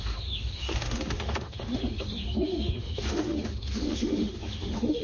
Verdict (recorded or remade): remade